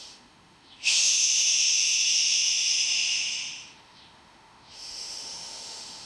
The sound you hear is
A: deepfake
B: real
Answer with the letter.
A